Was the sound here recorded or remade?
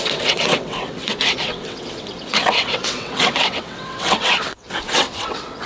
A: remade